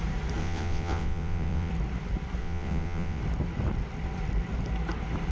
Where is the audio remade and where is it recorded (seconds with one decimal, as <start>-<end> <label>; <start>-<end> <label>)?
0.0-0.4 recorded; 0.4-1.7 remade; 1.7-2.4 recorded; 2.4-3.2 remade; 3.2-5.3 recorded